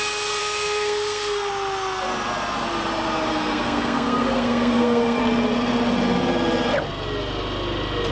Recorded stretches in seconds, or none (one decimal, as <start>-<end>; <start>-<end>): 0.0-0.4; 1.5-3.3; 5.2-8.1